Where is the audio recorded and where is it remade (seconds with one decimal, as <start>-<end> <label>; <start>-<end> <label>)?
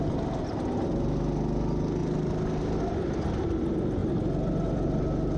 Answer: 0.0-5.4 recorded